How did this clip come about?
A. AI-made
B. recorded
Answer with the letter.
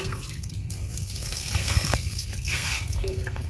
A